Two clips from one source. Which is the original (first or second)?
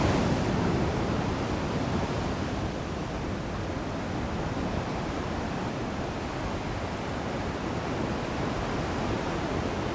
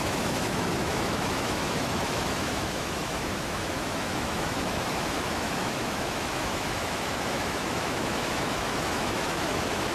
first